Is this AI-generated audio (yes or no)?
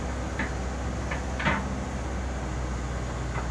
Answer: no